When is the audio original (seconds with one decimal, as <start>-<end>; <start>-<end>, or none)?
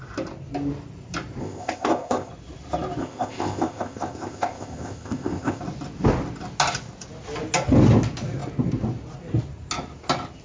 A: 0.0-1.4; 2.3-3.0; 5.6-10.4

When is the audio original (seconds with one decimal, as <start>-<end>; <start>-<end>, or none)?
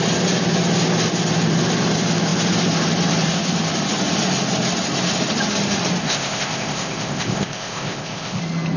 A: 0.0-6.0; 8.4-8.8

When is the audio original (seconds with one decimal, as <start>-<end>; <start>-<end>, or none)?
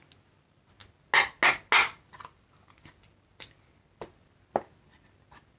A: 0.0-5.6